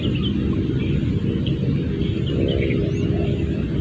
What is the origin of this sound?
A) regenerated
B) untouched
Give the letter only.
B